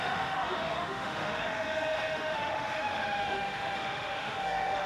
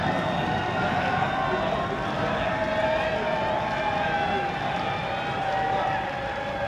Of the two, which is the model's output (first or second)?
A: first